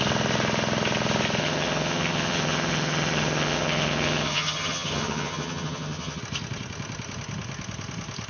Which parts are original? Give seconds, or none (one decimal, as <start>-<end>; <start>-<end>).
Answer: 0.0-1.4; 6.2-8.3